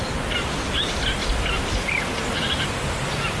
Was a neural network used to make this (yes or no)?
no